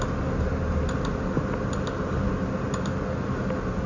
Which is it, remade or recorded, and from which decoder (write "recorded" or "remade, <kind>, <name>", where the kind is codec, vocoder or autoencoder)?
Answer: recorded